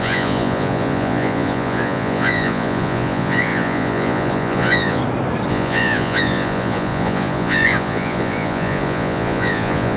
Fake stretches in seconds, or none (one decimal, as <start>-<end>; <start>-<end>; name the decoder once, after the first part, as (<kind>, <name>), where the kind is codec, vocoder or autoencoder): 0.0-5.0 (vocoder, Vocos); 5.5-10.0